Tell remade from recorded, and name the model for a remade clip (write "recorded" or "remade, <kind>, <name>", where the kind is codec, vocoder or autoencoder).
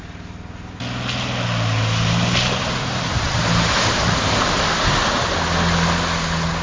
recorded